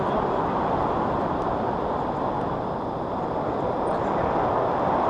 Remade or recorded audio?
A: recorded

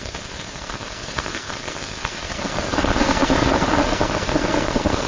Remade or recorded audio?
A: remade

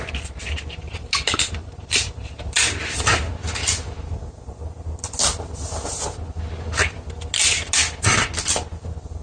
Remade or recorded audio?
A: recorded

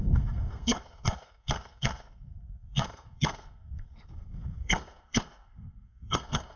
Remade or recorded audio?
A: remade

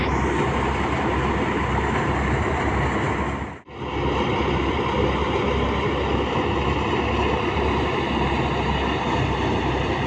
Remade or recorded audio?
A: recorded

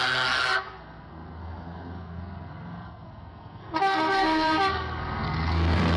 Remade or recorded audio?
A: remade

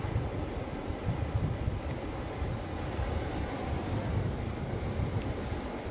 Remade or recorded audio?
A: recorded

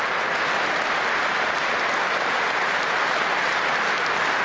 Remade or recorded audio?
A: recorded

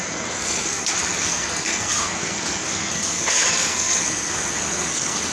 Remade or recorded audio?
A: remade